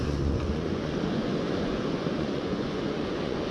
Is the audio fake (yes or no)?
yes